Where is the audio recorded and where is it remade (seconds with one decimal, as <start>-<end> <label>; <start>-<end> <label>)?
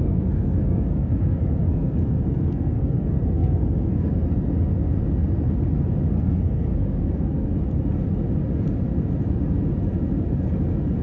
0.0-4.1 remade; 4.1-6.1 recorded; 6.1-7.5 remade; 7.5-11.0 recorded